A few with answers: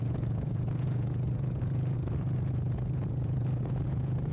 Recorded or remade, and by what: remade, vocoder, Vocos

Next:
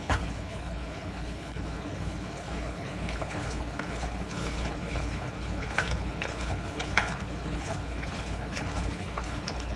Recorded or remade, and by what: remade, codec, HILCodec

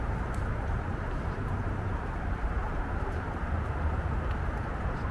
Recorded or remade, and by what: remade, vocoder, BigVGAN v2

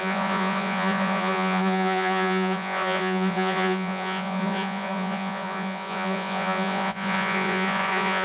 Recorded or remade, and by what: remade, vocoder, Vocos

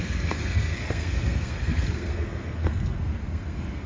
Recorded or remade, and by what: remade, codec, SNAC